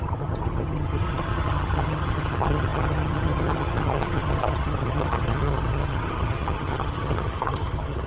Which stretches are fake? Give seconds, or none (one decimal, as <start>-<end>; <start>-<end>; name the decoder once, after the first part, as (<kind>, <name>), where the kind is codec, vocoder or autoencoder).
0.0-8.1 (vocoder, HiFi-GAN)